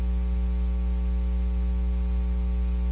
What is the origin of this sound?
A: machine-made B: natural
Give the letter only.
B